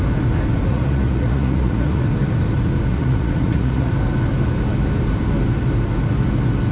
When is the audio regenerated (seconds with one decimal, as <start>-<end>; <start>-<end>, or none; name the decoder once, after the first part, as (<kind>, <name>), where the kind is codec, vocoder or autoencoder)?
0.7-2.0 (vocoder, Vocos); 2.9-3.9